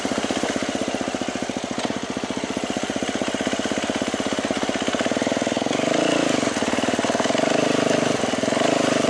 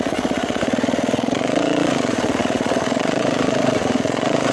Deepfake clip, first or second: second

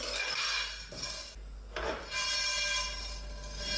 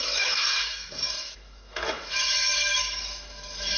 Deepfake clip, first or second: second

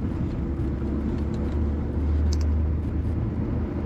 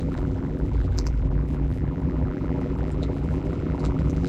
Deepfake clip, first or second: second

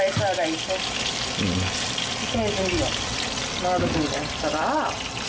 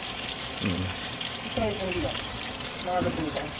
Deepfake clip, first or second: second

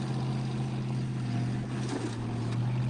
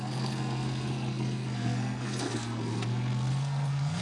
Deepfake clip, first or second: second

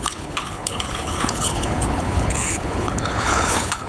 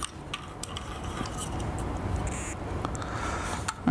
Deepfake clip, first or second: first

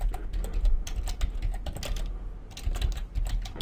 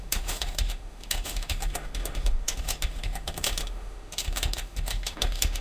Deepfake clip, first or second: second